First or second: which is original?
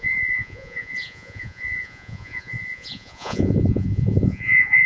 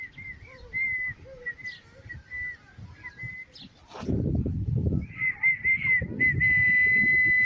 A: second